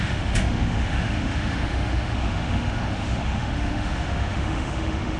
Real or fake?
fake